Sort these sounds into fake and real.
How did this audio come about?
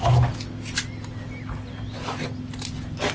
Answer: real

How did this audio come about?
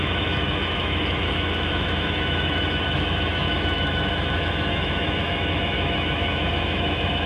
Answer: fake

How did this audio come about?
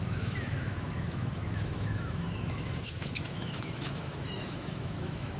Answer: fake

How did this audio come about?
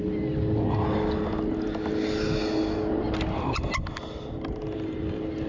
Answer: real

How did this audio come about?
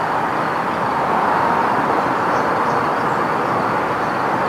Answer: real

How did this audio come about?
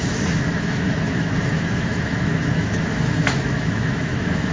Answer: fake